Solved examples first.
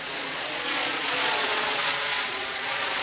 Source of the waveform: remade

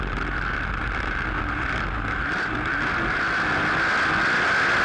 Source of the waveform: recorded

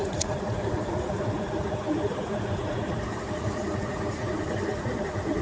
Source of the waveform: remade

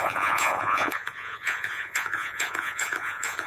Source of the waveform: remade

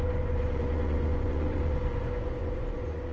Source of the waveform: remade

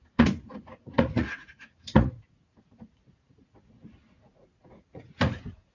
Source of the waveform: remade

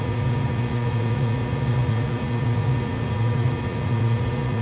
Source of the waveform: remade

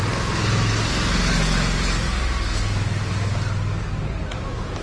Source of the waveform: recorded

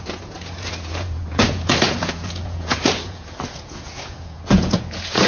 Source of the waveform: remade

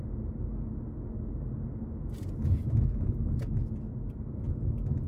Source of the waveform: recorded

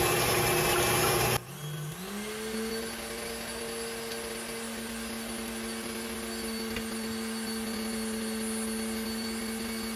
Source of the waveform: recorded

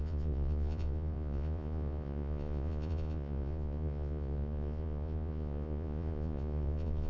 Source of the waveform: remade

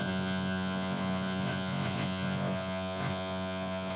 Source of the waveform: remade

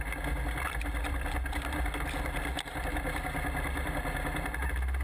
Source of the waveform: recorded